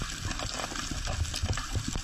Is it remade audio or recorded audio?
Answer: recorded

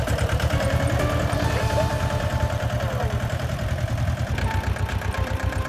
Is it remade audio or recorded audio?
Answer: remade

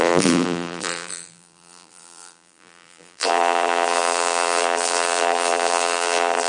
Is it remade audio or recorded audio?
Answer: remade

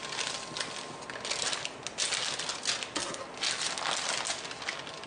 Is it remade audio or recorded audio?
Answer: recorded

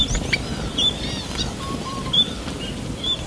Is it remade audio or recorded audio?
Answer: remade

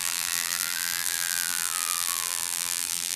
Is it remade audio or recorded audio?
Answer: remade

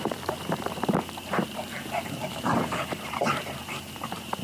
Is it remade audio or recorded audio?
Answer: remade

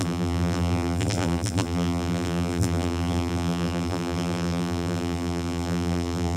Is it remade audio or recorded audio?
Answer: remade